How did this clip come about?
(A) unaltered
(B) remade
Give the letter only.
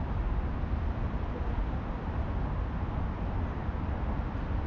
A